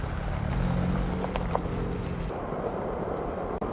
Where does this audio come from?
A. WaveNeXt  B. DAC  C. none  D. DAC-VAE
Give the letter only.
C